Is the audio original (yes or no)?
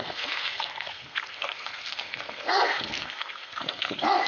no